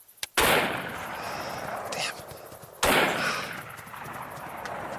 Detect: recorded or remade recorded